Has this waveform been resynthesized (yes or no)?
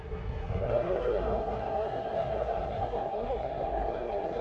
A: yes